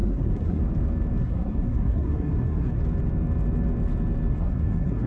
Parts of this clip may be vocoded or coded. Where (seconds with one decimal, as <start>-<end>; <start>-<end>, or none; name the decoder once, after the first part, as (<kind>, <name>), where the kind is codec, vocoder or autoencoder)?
0.0-0.6 (codec, SNAC); 1.2-2.8; 4.3-5.1